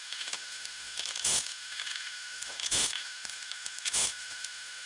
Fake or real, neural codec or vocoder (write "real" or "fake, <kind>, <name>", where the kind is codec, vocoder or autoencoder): fake, autoencoder, DAC-VAE